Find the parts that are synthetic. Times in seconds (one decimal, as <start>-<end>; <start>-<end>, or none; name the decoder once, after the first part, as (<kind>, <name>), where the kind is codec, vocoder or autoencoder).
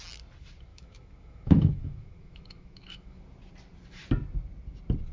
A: 0.7-3.2 (autoencoder, DAC-VAE)